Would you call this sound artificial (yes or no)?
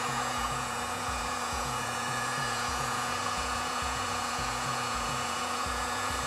yes